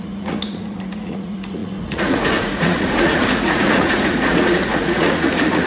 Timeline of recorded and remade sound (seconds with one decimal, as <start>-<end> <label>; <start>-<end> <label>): 0.0-5.7 remade

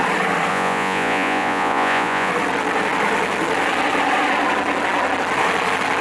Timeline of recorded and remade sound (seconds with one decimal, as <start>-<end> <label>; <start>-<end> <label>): 0.0-0.5 recorded; 0.5-2.3 remade; 2.3-6.0 recorded

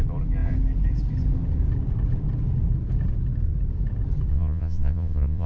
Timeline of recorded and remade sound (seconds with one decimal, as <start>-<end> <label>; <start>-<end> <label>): 0.0-4.3 recorded; 4.3-5.5 remade

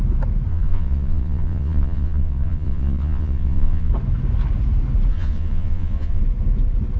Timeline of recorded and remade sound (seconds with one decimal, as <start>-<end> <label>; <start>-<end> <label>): 0.0-0.5 recorded; 0.5-3.9 remade; 3.9-5.1 recorded; 5.1-6.2 remade; 6.2-7.0 recorded

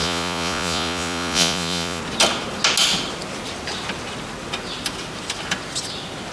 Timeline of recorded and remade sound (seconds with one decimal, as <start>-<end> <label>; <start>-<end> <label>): 0.0-2.0 remade; 2.0-6.3 recorded